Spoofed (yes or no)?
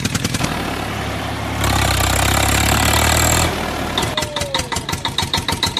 no